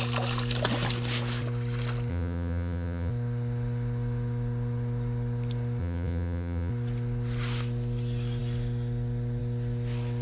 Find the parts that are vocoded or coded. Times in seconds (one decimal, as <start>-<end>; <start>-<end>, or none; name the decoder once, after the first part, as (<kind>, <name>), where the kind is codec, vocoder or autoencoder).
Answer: 2.1-3.1 (vocoder, Vocos); 5.8-6.7